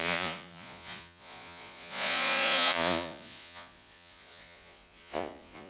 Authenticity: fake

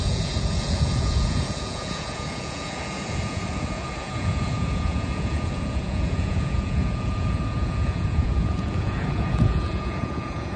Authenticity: fake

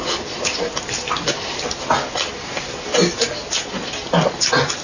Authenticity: real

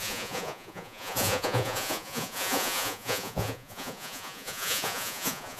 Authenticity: fake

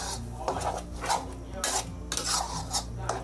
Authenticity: real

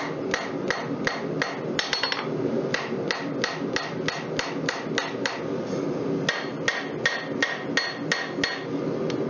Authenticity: real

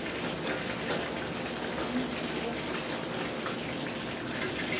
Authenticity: real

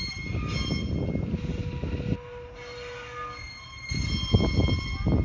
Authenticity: real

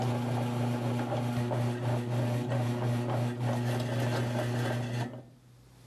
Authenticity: real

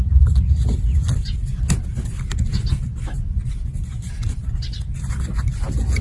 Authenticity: real